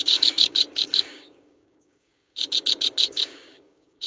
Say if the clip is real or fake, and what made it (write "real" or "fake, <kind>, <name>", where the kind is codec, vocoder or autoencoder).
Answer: fake, codec, DAC